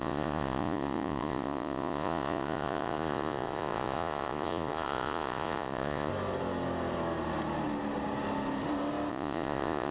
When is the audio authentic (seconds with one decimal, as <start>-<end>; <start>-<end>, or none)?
6.1-9.1